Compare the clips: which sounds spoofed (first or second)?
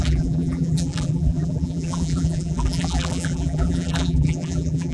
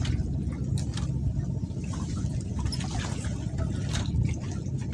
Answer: first